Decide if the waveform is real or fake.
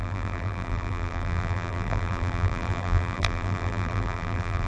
fake